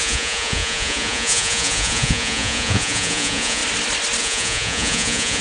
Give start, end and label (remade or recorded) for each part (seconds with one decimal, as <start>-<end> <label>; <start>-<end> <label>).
0.0-3.6 remade; 3.6-4.2 recorded; 4.2-5.4 remade